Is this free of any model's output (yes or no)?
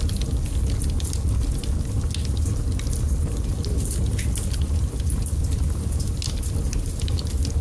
yes